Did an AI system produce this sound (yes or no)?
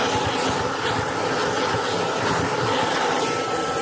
no